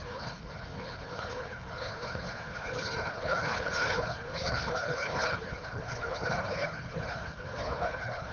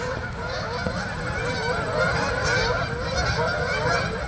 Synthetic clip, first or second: first